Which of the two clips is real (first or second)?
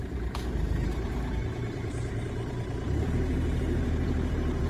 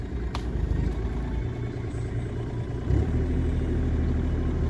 second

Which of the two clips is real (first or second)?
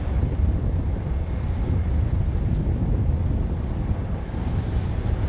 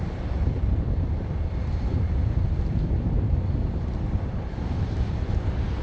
first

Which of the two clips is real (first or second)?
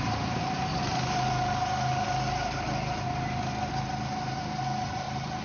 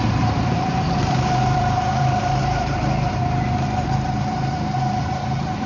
first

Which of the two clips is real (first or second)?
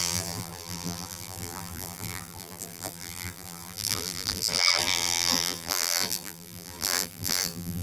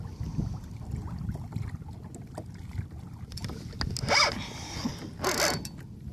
second